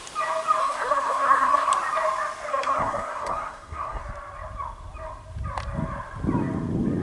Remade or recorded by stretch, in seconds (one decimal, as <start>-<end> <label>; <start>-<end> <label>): 0.0-0.6 recorded; 0.6-1.7 remade; 1.7-2.5 recorded; 2.5-4.0 remade; 4.0-7.0 recorded